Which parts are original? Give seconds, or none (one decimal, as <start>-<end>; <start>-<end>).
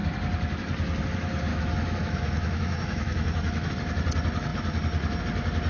0.0-1.5; 3.7-5.7